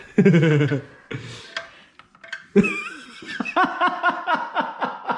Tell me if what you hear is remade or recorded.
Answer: recorded